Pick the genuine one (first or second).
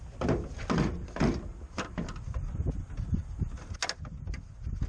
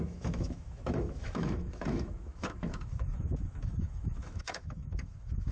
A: first